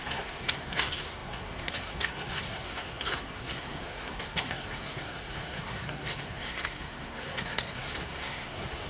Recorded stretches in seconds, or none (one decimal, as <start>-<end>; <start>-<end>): none